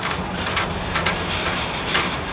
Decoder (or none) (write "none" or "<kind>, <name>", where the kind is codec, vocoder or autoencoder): none